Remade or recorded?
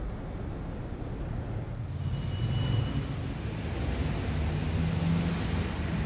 recorded